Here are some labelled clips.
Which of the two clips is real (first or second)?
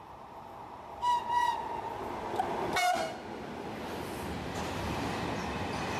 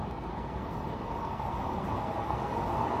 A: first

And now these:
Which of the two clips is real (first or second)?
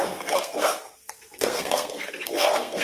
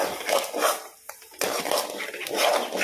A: second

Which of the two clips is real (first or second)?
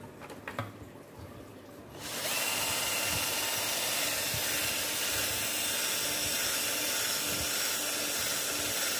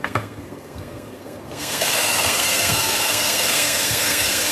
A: first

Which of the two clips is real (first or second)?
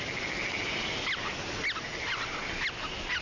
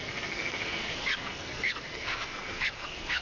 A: first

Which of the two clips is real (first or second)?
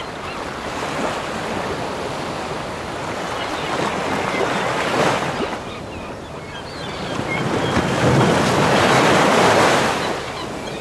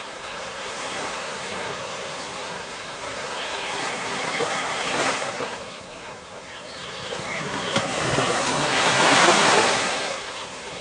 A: first